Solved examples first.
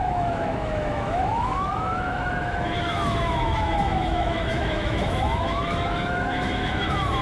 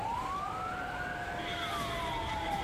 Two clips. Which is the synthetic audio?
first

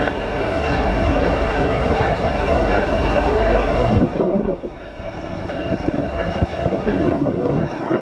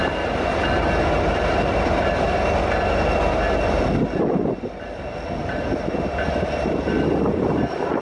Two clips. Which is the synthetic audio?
first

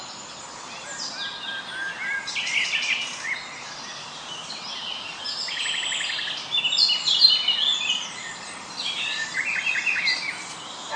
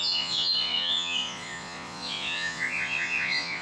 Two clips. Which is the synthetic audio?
second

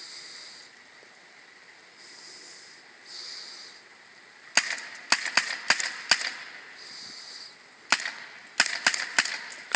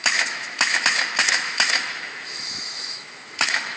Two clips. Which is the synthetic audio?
second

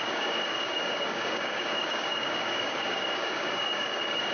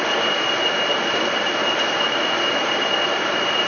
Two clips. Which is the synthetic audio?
first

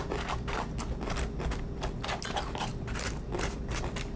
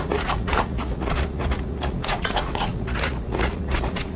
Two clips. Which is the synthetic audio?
second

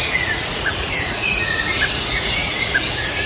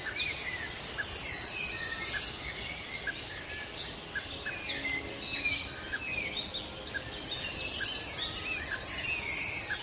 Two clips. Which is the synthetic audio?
first